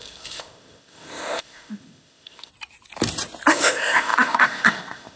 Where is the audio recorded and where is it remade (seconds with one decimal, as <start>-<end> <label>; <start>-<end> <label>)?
0.0-2.5 remade; 2.5-3.5 recorded; 3.5-5.2 remade

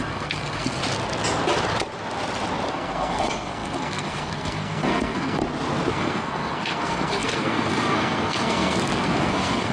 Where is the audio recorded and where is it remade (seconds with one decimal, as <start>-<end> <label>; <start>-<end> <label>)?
0.0-0.8 remade; 0.8-2.7 recorded; 2.7-5.4 remade; 5.4-5.9 recorded; 5.9-9.7 remade

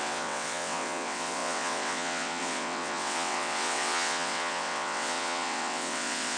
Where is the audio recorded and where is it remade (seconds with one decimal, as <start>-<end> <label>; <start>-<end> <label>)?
0.0-6.4 remade

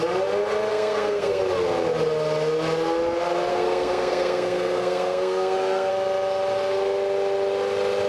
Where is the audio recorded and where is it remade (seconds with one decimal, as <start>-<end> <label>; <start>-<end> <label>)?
0.0-0.7 recorded; 0.7-1.4 remade; 1.4-3.5 recorded; 3.5-5.9 remade; 5.9-8.1 recorded

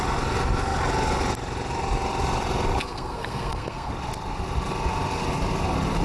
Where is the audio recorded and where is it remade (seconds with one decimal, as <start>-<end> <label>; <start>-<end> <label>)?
0.0-2.8 recorded; 2.8-3.9 remade; 3.9-6.0 recorded

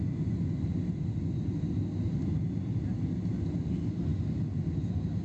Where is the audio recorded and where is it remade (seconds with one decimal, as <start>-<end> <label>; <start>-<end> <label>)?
0.0-5.2 recorded

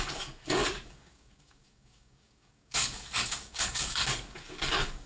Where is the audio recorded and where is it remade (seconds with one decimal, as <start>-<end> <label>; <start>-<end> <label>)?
0.0-5.1 remade

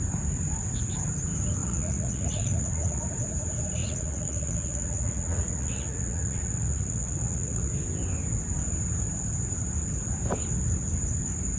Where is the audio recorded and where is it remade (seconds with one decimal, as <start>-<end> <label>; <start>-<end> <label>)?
0.0-1.6 recorded; 1.6-3.0 remade; 3.0-3.8 recorded; 3.8-7.7 remade; 7.7-11.6 recorded